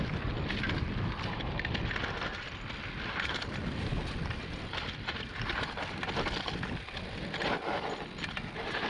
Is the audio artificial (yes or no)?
no